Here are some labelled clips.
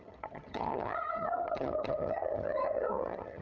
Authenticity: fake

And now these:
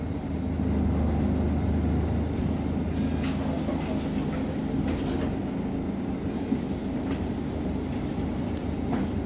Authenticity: real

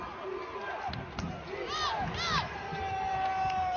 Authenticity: real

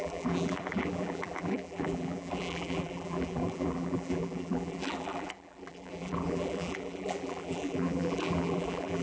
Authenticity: fake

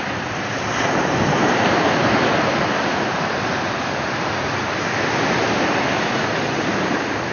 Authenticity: fake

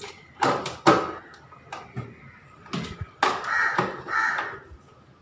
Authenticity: real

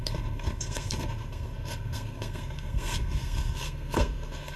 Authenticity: fake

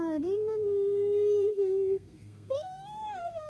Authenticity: fake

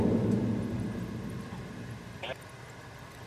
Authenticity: real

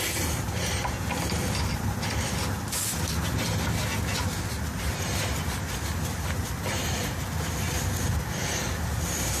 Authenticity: real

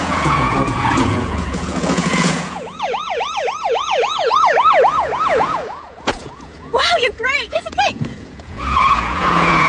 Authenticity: fake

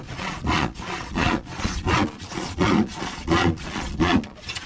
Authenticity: fake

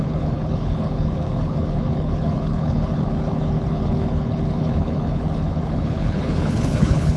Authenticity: fake